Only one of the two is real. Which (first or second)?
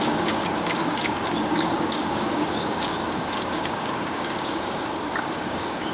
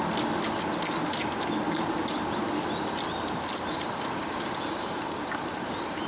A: second